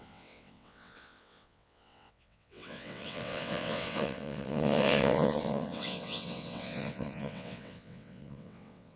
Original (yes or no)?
no